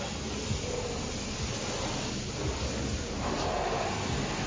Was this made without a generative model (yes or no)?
yes